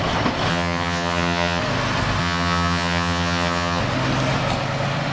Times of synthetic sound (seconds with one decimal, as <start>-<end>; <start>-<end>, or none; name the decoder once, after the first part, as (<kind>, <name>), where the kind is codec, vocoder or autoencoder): 0.5-1.6 (vocoder, HiFi-GAN); 2.2-3.8